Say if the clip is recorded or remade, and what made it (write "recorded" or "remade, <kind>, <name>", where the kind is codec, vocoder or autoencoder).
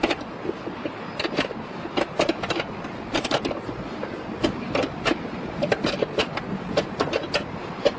recorded